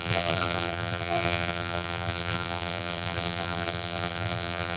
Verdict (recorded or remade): remade